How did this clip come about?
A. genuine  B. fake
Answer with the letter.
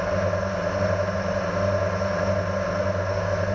A